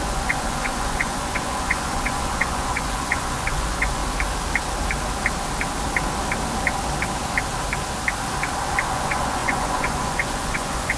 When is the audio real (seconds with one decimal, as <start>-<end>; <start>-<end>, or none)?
4.0-8.9